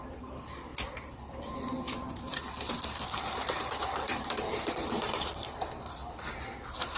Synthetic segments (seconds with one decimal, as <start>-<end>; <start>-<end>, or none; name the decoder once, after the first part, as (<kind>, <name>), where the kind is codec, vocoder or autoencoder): 0.0-6.0 (vocoder, BigVGAN v2)